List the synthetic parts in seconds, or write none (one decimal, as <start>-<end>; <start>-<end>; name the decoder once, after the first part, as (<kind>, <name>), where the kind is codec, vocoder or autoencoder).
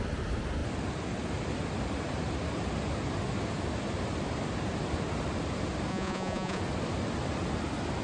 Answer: 5.9-6.6 (vocoder, Vocos)